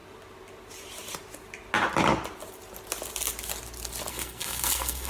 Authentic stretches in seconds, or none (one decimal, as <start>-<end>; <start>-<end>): 0.0-4.1

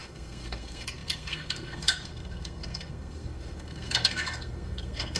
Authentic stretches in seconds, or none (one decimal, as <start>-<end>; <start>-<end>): none